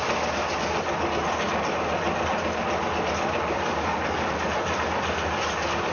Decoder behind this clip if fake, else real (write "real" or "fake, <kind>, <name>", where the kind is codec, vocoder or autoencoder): real